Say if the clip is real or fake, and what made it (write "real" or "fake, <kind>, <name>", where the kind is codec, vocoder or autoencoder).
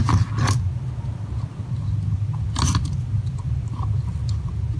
real